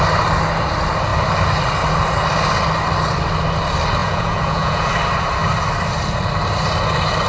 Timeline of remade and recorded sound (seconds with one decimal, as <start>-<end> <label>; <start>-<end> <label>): 0.0-4.0 recorded; 4.0-4.9 remade; 4.9-7.3 recorded